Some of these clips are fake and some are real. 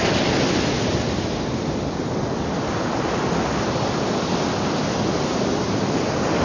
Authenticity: real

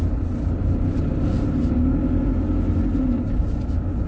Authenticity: real